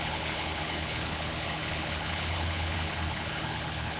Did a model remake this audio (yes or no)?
yes